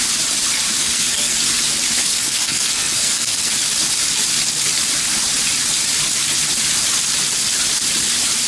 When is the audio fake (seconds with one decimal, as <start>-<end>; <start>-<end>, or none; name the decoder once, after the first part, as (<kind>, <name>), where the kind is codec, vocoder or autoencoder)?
0.8-1.4 (codec, SNAC); 2.0-3.5